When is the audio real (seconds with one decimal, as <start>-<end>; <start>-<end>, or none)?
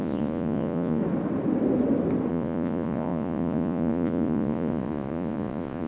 1.0-2.3